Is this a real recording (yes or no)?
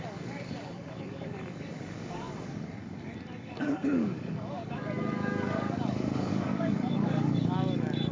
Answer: no